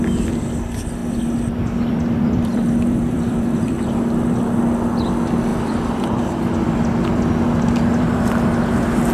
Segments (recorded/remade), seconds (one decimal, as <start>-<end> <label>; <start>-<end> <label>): 0.0-1.0 recorded; 1.0-4.4 remade; 4.4-5.5 recorded; 5.5-8.3 remade; 8.3-9.1 recorded